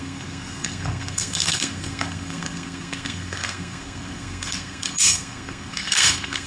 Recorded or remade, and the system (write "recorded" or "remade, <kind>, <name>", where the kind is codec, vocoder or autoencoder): remade, codec, SNAC